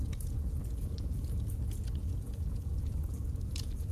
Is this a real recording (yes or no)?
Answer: no